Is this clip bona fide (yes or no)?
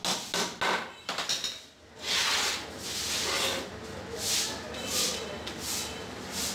yes